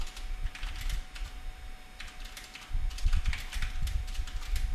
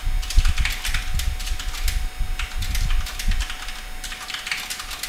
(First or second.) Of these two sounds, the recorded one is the second